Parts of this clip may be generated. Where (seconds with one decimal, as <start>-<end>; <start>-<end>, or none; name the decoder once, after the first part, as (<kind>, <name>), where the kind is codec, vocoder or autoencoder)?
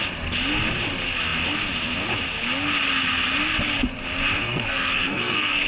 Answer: 4.4-5.7 (codec, SNAC)